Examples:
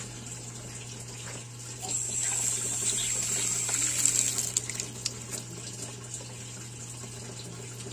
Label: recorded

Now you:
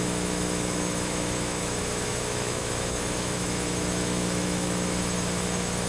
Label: remade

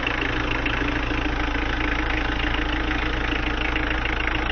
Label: recorded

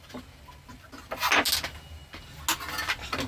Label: recorded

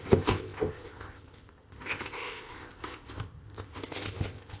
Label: remade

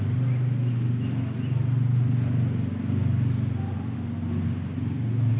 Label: recorded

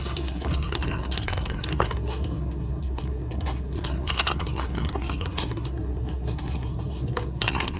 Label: remade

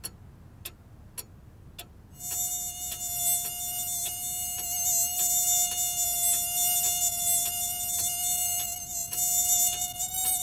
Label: recorded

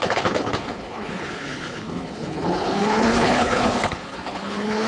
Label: remade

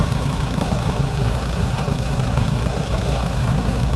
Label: remade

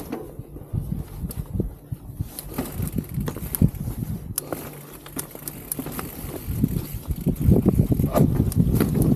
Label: recorded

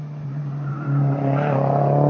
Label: recorded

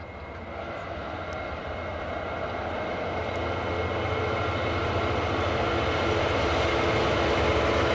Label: recorded